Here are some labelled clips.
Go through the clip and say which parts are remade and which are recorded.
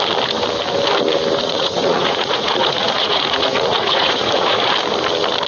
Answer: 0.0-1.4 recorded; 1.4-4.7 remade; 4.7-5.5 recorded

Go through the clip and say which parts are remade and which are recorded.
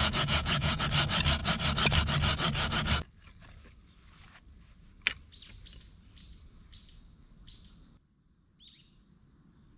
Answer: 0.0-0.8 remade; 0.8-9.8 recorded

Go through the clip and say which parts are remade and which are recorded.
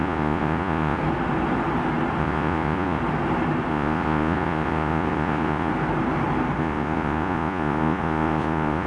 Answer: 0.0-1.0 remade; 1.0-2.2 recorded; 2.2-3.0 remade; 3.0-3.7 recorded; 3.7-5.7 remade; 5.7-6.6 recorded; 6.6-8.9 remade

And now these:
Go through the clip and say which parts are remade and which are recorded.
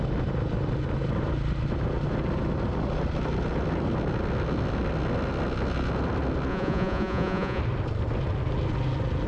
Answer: 0.0-6.5 recorded; 6.5-7.6 remade; 7.6-9.3 recorded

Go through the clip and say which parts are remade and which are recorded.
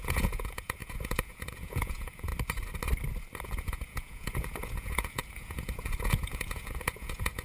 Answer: 0.0-2.3 remade; 2.3-3.4 recorded; 3.4-7.4 remade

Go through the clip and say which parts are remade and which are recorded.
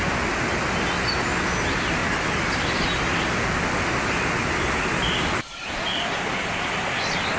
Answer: 0.0-7.4 recorded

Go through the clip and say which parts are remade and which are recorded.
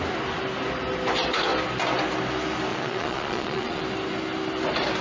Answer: 0.0-2.7 recorded; 2.7-3.8 remade; 3.8-5.0 recorded